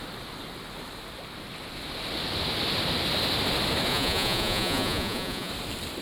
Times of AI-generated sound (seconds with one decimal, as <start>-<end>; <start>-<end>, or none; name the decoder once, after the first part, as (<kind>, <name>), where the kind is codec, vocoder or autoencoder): 3.9-5.5 (vocoder, Vocos)